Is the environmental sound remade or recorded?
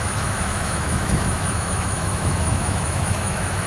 remade